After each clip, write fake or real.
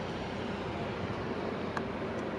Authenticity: real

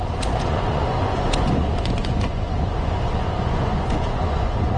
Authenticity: fake